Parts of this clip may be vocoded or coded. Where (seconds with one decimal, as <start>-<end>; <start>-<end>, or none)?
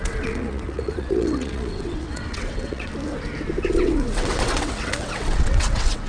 0.0-2.9; 3.8-6.1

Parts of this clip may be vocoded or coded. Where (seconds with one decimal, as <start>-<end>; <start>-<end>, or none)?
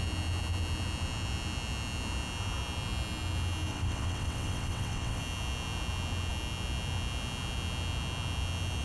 3.7-5.2